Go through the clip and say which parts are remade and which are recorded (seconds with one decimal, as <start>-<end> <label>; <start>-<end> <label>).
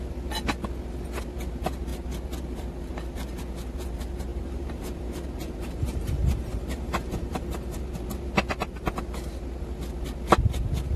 0.0-4.3 recorded; 4.3-7.8 remade; 7.8-11.0 recorded